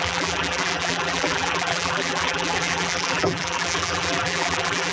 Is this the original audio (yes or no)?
no